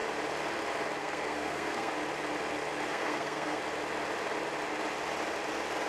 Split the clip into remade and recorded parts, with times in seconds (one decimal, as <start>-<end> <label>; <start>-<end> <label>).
0.0-1.0 recorded; 1.0-1.9 remade; 1.9-2.9 recorded; 2.9-3.6 remade; 3.6-5.9 recorded

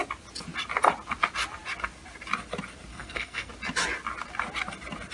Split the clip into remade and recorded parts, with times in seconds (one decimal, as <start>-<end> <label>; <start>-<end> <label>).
0.0-2.9 recorded; 2.9-3.5 remade; 3.5-5.1 recorded

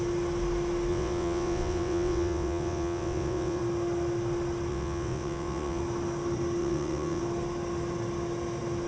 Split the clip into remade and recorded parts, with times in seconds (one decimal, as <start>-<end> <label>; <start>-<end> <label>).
0.0-0.9 recorded; 0.9-3.6 remade; 3.6-4.7 recorded; 4.7-5.8 remade; 5.8-6.6 recorded; 6.6-7.2 remade; 7.2-8.9 recorded